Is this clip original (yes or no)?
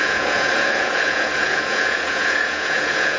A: no